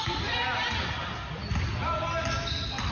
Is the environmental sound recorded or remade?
recorded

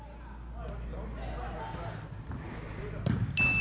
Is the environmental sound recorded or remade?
recorded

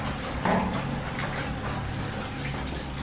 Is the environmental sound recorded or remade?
recorded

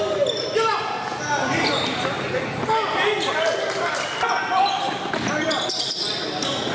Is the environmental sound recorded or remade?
recorded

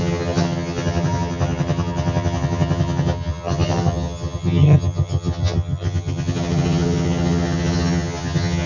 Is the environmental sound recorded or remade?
remade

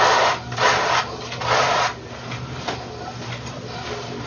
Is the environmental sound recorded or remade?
recorded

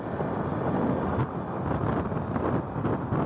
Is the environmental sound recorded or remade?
recorded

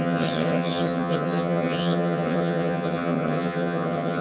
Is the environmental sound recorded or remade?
remade